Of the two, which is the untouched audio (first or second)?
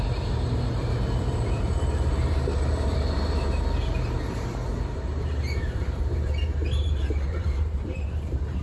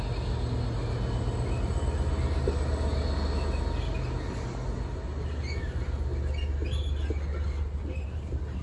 second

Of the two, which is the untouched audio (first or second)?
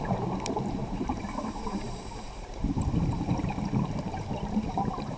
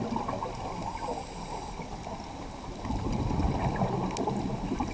second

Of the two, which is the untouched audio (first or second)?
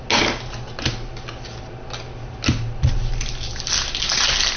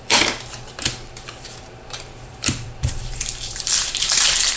first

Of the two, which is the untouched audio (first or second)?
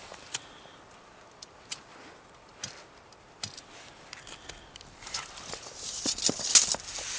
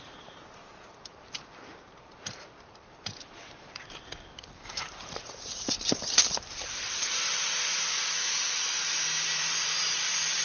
first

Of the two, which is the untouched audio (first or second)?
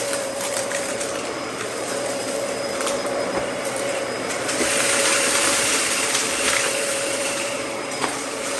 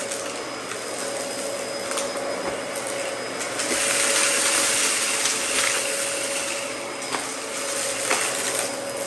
second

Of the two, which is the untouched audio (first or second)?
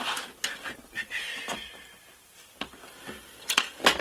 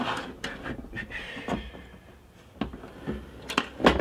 second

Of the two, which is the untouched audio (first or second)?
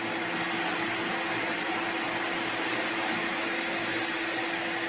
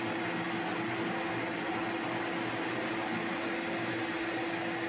second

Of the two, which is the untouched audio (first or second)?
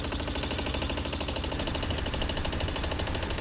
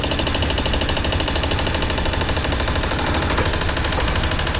second